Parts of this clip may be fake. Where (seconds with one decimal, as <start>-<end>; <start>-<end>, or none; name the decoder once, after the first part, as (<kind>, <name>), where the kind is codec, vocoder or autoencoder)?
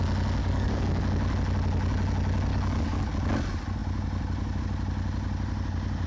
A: 0.4-1.0 (codec, DAC); 2.5-3.1